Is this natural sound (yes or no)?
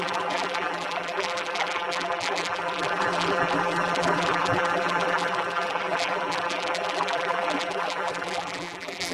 no